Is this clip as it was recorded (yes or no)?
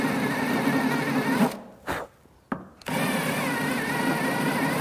yes